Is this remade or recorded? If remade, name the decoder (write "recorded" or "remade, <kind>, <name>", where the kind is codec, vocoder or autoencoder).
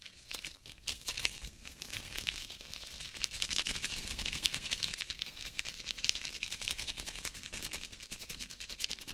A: remade, codec, SNAC